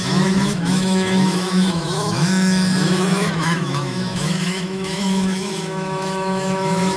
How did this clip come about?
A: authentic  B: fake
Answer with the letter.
B